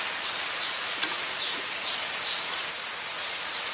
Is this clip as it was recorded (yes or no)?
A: no